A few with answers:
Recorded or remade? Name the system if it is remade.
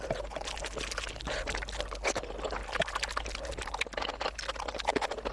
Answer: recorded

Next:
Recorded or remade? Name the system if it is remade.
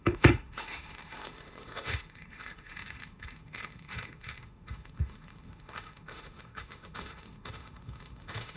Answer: remade, autoencoder, DAC-VAE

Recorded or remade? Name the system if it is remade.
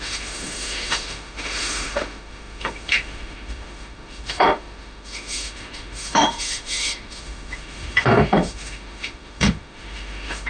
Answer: remade, autoencoder, DAC-VAE